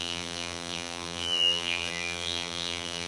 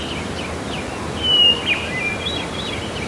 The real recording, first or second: second